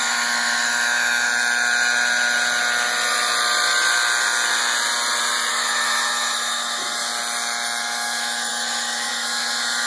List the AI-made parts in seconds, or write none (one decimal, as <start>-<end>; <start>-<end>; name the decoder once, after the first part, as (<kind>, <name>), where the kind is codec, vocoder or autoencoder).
0.0-1.3 (autoencoder, DAC-VAE); 5.5-7.1; 7.8-9.9